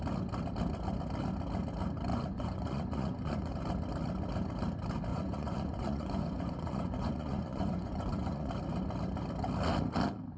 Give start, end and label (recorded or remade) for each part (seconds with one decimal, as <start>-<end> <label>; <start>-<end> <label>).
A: 0.0-2.1 recorded; 2.1-3.5 remade; 3.5-5.1 recorded; 5.1-8.5 remade; 8.5-10.4 recorded

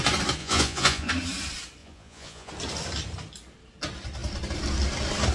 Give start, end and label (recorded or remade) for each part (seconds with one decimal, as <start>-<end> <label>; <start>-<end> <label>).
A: 0.0-0.4 recorded; 0.4-1.1 remade; 1.1-1.8 recorded; 1.8-2.5 remade; 2.5-5.3 recorded

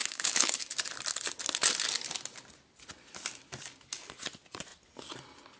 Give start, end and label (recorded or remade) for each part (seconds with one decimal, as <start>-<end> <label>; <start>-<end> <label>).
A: 0.0-0.8 remade; 0.8-5.6 recorded